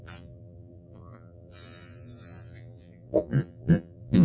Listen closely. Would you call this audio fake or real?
fake